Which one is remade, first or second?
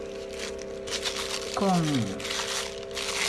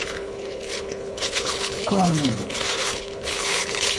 second